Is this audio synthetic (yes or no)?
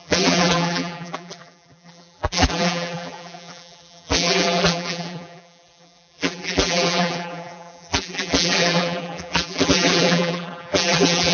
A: yes